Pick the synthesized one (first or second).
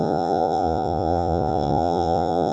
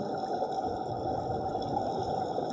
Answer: first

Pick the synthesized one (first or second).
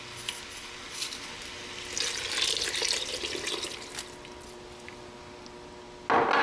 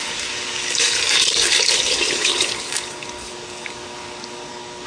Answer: second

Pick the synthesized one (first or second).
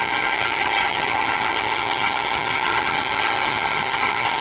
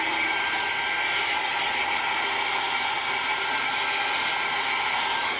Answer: first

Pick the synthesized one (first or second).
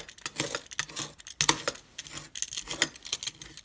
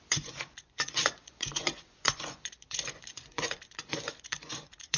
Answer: second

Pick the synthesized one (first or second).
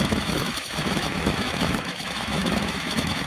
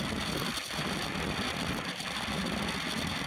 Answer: first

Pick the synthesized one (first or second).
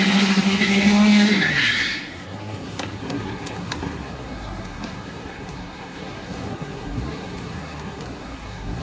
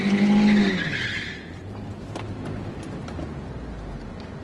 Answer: first